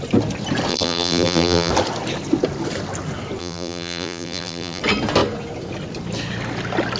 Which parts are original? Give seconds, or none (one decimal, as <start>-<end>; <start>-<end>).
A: 0.0-0.7; 1.7-3.4; 4.8-7.0